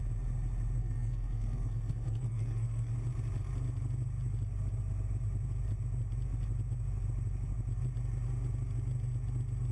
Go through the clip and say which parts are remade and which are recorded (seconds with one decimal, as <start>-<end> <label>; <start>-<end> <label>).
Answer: 0.0-0.8 recorded; 0.8-2.9 remade; 2.9-9.7 recorded